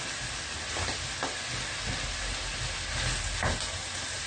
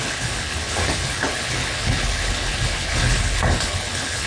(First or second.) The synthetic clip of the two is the second